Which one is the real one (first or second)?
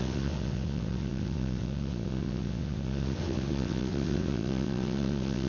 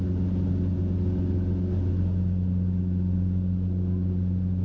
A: second